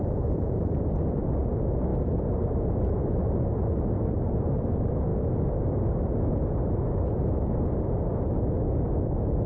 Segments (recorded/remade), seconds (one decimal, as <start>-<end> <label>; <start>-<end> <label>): 0.0-9.5 recorded